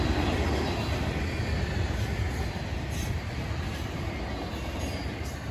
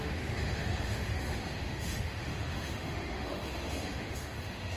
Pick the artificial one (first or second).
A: second